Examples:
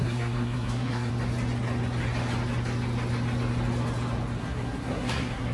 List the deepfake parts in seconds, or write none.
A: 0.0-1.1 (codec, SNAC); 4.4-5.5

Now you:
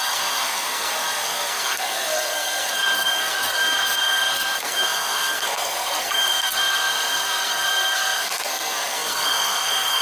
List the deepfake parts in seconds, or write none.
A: 0.0-10.0 (codec, SNAC)

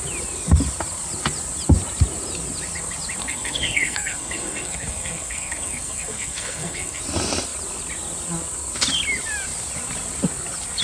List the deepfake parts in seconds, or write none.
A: 3.2-7.0 (codec, SNAC)

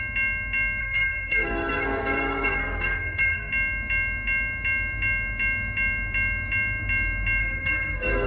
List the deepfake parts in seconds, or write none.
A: 0.8-3.5 (codec, SNAC); 7.4-8.3

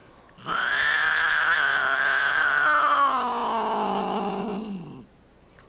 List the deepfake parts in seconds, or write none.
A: none

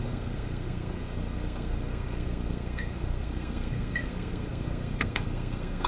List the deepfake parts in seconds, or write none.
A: 0.0-5.9 (codec, SNAC)

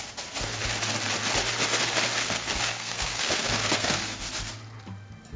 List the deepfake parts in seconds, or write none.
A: 2.2-4.3 (codec, SNAC)

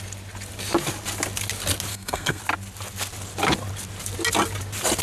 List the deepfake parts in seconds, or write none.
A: 1.9-2.4 (codec, SNAC)